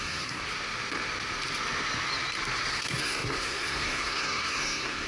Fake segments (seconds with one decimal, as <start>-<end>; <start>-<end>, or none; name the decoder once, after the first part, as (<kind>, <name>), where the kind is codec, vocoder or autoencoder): 0.0-0.4 (codec, SNAC); 2.7-5.1